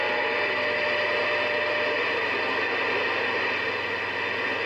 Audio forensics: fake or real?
real